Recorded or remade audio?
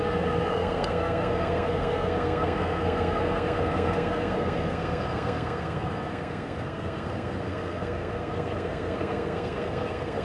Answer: remade